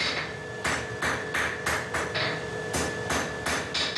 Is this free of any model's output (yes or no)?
yes